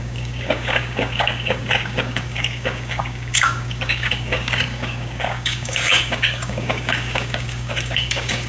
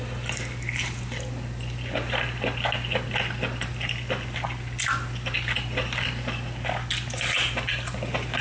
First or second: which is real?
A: second